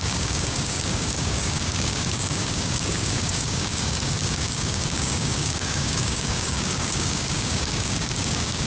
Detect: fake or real fake